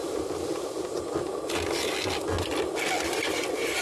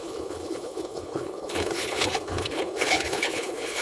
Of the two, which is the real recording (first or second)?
first